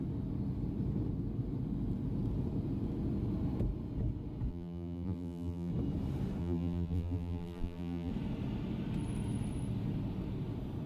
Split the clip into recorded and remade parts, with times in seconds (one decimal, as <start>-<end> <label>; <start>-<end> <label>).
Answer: 0.0-4.5 recorded; 4.5-5.7 remade; 5.7-6.4 recorded; 6.4-8.1 remade; 8.1-10.9 recorded